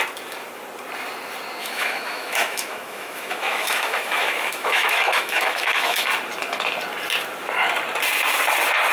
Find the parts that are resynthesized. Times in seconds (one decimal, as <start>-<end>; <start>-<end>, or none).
1.6-6.1